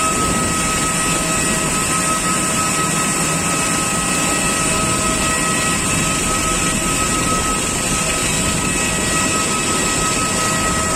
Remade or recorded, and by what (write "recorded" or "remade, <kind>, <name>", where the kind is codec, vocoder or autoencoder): recorded